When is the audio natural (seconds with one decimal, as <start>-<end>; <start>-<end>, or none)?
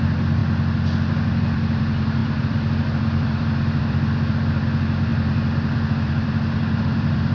0.4-1.1